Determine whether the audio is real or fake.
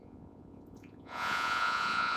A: fake